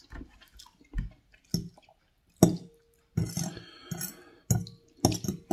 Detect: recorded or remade recorded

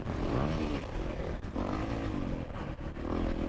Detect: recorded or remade recorded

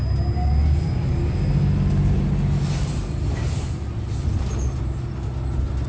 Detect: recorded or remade recorded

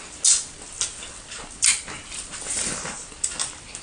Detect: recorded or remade recorded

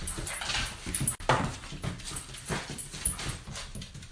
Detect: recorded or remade recorded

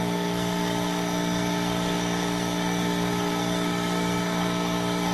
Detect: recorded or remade remade